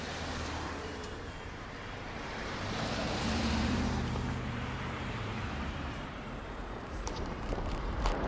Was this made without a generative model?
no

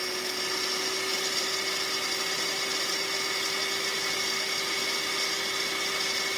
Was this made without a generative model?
yes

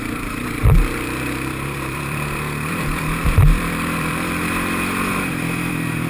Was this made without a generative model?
no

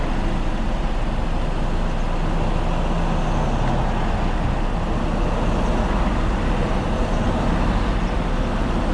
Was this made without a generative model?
yes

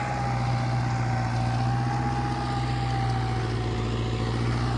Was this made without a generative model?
yes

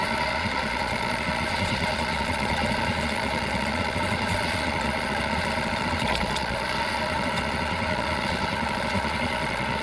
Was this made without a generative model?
no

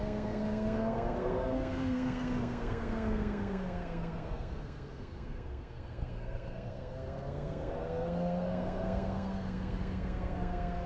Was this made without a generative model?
no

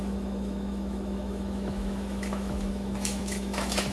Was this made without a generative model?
no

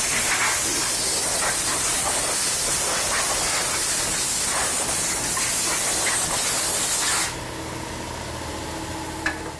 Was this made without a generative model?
yes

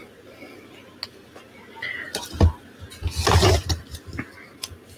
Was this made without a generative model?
yes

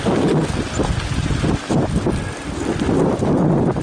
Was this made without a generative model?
yes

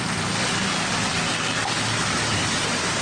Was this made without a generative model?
yes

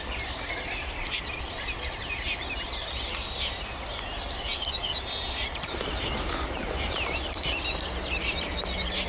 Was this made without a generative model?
no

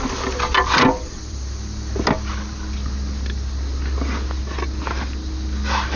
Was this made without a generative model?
yes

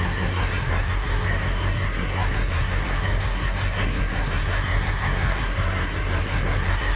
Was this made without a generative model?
no